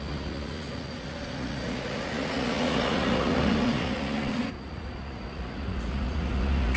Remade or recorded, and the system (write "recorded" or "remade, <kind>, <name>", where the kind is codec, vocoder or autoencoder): remade, vocoder, Vocos